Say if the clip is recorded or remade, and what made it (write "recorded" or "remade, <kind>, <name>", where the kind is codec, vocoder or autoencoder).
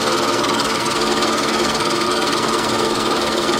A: remade, codec, SNAC